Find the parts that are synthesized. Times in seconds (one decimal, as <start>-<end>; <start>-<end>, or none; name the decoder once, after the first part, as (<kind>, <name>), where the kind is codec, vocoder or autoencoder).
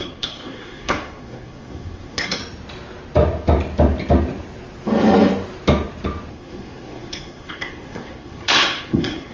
0.0-2.4 (codec, SNAC); 6.3-9.3